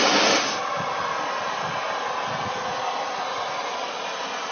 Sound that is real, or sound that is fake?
real